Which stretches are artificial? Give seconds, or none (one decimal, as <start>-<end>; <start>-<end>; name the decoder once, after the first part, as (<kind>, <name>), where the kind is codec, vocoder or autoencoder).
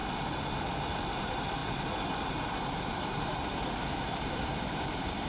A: 1.2-1.6 (vocoder, BigVGAN v2); 2.6-5.3